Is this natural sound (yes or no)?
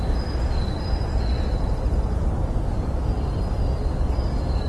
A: yes